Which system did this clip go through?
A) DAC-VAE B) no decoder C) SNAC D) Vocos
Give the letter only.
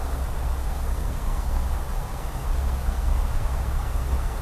C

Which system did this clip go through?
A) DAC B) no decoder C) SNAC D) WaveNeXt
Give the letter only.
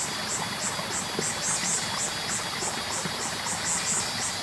B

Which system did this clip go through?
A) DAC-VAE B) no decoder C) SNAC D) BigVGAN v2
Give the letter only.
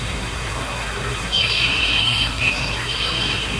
C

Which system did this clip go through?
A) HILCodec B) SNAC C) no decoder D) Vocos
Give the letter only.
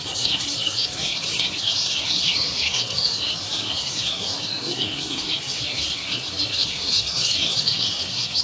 B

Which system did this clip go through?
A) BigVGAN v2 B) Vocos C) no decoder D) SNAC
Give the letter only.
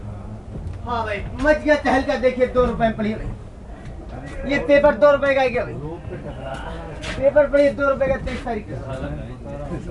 C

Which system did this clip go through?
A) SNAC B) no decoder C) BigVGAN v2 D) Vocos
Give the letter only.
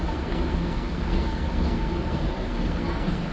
A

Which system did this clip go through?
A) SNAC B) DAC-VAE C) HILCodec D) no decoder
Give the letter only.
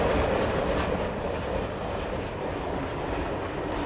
D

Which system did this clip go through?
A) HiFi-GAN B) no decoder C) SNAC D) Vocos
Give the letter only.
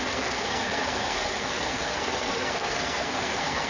C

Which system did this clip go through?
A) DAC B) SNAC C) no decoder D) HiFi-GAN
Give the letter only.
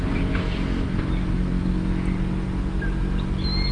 C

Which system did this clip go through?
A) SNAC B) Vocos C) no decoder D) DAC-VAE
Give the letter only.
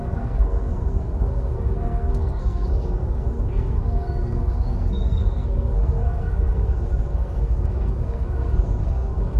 A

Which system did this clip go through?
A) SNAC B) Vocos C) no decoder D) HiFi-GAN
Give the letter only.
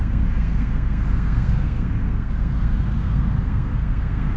A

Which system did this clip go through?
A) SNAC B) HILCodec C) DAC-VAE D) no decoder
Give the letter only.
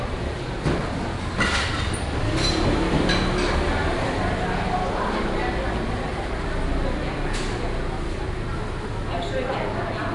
D